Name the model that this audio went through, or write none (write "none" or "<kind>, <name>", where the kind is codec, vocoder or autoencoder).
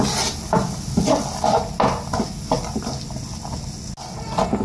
none